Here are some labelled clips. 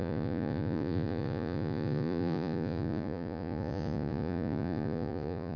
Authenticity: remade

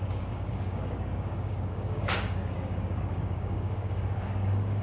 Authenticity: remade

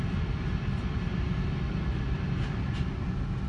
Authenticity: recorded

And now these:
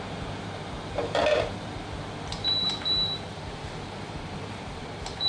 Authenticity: remade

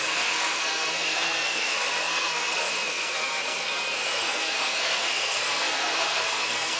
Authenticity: remade